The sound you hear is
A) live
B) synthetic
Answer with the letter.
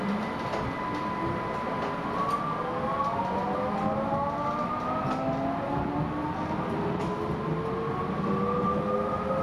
A